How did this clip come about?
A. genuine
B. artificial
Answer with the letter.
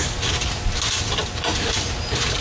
A